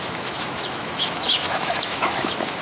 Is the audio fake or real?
fake